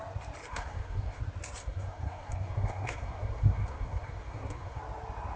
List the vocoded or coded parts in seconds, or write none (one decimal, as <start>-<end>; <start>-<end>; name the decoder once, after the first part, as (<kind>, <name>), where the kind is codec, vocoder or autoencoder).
0.5-1.2 (codec, SNAC); 1.6-4.8

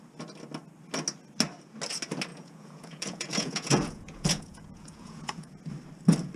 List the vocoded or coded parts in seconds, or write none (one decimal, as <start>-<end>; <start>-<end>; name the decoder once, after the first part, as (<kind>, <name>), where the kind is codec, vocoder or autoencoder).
2.3-5.6 (vocoder, Vocos)

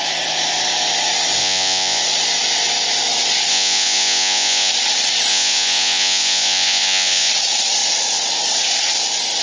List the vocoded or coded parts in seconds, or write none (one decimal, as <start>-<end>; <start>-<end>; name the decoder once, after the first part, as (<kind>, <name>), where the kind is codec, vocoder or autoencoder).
1.4-2.0 (vocoder, Vocos); 3.5-4.7; 5.3-7.3

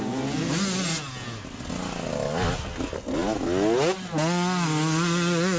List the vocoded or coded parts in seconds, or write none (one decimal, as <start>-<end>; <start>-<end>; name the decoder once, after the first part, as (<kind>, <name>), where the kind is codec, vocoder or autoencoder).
none

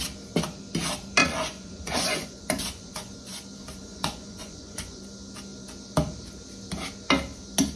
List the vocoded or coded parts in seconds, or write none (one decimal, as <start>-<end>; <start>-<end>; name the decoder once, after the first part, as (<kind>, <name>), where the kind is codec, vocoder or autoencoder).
1.2-3.4 (vocoder, Vocos); 3.8-5.0

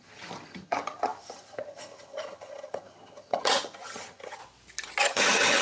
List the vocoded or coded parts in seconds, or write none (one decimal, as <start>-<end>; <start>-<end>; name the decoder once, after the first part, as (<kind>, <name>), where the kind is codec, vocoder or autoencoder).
0.0-4.4 (vocoder, HiFi-GAN); 5.0-5.6